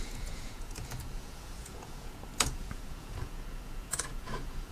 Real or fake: fake